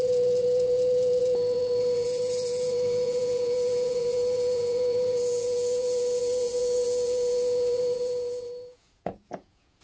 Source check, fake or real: fake